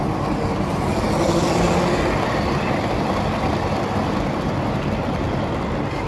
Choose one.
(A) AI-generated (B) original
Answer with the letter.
B